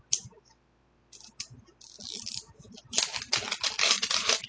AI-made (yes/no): no